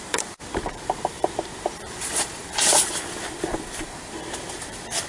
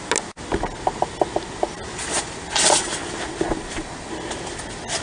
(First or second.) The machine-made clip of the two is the first